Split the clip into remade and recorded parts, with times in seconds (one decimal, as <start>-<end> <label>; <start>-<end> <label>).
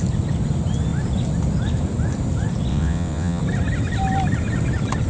0.0-2.7 recorded; 2.7-3.4 remade; 3.4-5.1 recorded